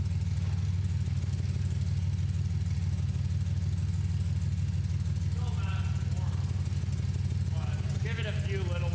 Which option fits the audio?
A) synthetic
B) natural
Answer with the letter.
B